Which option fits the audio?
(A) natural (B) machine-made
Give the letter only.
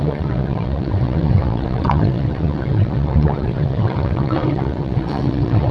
B